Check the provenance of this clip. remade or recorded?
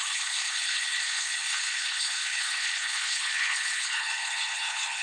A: remade